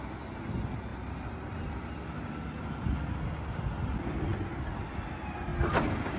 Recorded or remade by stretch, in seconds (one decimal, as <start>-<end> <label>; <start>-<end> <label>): 0.0-0.9 recorded; 0.9-1.9 remade; 1.9-6.2 recorded